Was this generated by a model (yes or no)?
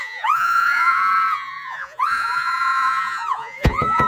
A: yes